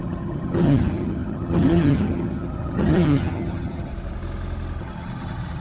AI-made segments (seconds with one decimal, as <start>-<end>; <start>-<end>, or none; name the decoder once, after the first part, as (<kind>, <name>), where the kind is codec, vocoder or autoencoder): 0.0-3.9 (vocoder, HiFi-GAN); 4.8-5.6